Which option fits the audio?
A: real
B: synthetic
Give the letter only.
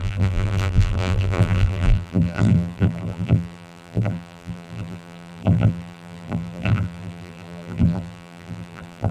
B